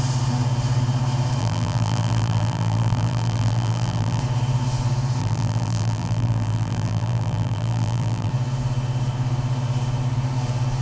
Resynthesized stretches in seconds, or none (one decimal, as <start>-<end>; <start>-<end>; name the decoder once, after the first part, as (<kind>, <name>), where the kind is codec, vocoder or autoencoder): 1.4-4.2 (vocoder, BigVGAN v2); 5.2-8.3